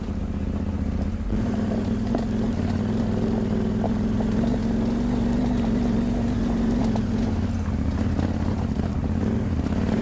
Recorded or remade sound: recorded